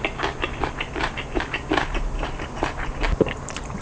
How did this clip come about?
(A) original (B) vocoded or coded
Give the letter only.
B